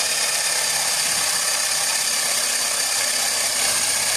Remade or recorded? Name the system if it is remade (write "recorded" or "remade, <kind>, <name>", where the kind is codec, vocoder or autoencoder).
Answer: remade, vocoder, BigVGAN v2